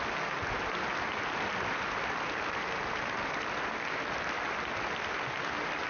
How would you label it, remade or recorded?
recorded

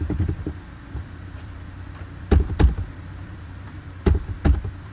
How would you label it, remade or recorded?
remade